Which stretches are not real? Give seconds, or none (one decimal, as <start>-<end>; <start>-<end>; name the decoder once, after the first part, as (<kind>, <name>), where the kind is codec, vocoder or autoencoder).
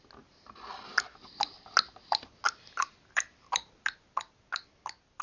none